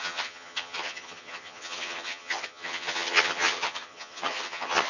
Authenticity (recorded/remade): remade